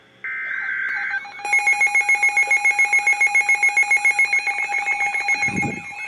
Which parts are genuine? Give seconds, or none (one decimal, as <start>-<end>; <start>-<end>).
0.0-6.1